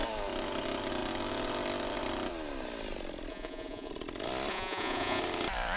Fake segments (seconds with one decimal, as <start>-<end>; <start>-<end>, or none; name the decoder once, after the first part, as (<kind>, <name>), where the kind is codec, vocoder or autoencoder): 3.3-3.9 (vocoder, Vocos); 4.5-5.2